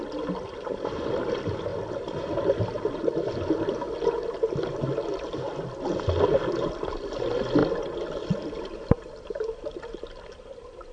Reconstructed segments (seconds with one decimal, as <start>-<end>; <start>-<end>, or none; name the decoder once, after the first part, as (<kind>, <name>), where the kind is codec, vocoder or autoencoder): none